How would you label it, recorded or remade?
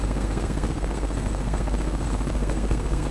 remade